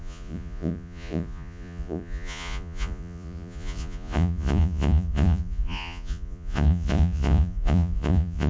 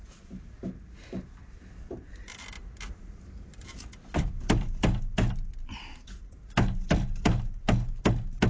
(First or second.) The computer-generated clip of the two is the first